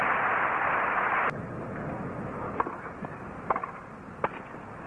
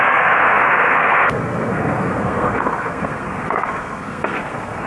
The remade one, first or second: second